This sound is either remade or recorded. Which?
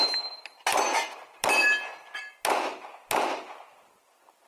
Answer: recorded